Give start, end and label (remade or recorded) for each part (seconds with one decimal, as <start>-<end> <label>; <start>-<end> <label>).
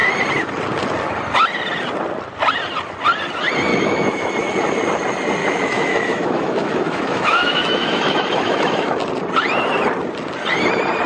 0.0-3.7 recorded; 3.7-4.3 remade; 4.3-5.4 recorded; 5.4-9.0 remade; 9.0-11.1 recorded